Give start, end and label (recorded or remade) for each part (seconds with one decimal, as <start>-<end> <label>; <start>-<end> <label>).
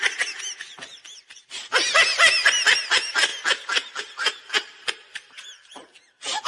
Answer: 0.0-6.5 recorded